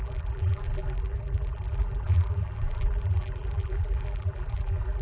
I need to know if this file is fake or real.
fake